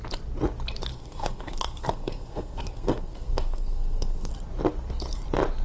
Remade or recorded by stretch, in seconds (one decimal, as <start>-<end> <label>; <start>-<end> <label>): 0.0-0.9 recorded; 0.9-4.3 remade; 4.3-5.6 recorded